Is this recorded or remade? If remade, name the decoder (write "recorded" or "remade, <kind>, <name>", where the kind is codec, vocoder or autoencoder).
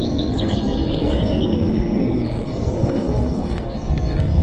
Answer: remade, codec, SNAC